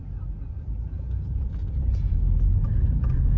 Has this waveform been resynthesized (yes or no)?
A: no